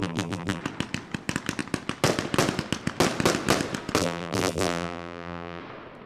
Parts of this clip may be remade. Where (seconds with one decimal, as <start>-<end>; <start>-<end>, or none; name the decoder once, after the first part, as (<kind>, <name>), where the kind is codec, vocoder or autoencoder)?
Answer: 0.0-0.6 (vocoder, BigVGAN v2); 4.0-5.6